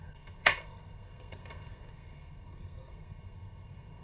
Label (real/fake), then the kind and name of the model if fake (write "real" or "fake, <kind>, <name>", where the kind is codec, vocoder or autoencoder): fake, codec, SNAC